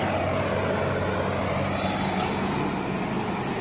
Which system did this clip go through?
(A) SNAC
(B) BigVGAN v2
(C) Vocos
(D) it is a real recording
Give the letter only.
D